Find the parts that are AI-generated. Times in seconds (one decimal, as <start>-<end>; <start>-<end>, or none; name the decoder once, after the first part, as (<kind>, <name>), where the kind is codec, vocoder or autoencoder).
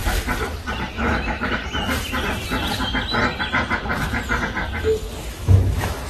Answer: 0.9-1.6 (autoencoder, DAC-VAE); 5.3-6.1